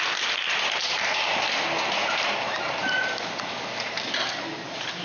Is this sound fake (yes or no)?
no